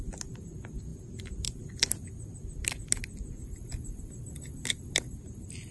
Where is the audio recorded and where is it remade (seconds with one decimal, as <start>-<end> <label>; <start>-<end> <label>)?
0.0-5.7 recorded